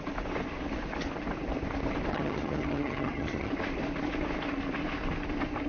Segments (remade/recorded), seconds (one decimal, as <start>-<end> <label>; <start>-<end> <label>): 0.0-2.1 recorded; 2.1-3.5 remade; 3.5-5.7 recorded